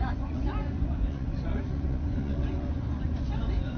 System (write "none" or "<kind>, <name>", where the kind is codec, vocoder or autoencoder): vocoder, Vocos